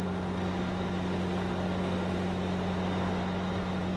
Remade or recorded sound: recorded